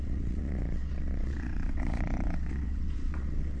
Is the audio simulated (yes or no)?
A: yes